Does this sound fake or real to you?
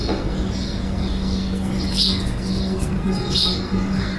fake